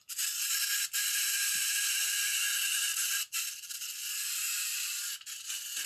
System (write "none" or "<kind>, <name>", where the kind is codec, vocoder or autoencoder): none